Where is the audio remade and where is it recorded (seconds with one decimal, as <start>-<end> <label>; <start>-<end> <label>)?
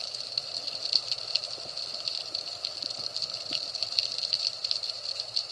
0.0-0.4 remade; 0.4-3.7 recorded; 3.7-5.5 remade